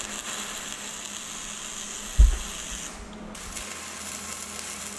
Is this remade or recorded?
recorded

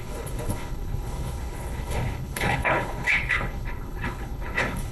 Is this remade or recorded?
remade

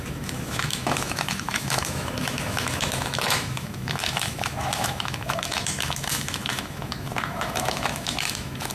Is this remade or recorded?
remade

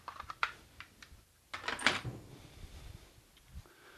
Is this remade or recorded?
recorded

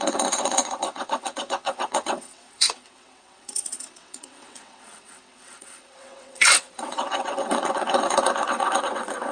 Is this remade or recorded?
remade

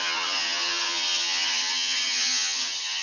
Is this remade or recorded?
remade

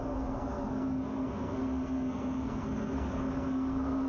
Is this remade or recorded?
remade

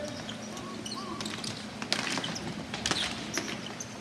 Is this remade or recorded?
recorded